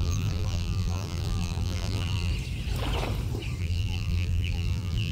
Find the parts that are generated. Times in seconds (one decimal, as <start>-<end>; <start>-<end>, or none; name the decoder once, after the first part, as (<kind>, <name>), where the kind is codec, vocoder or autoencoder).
0.0-2.3 (vocoder, BigVGAN v2); 3.6-5.1